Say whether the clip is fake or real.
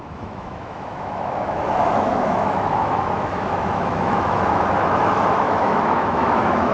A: fake